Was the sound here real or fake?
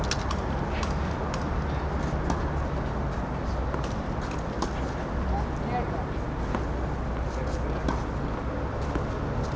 real